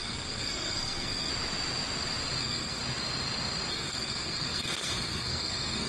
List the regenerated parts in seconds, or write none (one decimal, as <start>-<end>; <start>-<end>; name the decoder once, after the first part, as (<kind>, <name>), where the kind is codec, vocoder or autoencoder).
0.0-1.3 (codec, SNAC); 2.4-2.8; 3.7-5.9